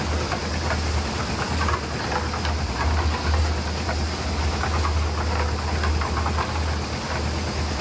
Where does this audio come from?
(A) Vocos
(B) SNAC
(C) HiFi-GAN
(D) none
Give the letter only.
D